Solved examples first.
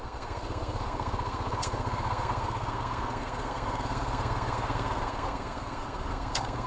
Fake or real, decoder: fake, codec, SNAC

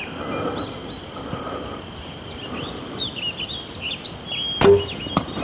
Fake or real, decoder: real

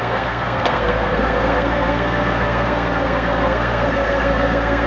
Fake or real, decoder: fake, codec, SNAC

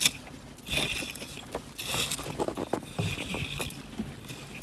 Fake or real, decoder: real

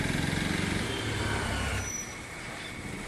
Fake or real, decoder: real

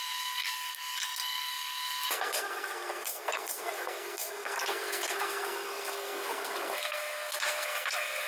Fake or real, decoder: fake, codec, SNAC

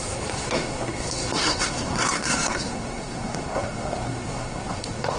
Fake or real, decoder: fake, codec, SNAC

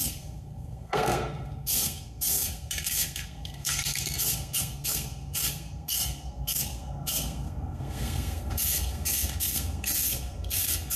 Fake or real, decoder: fake, codec, SNAC